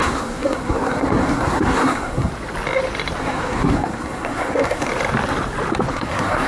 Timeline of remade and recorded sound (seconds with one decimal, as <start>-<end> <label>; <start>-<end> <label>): 0.0-2.3 remade; 2.3-3.2 recorded; 3.2-4.9 remade; 4.9-5.9 recorded; 5.9-6.5 remade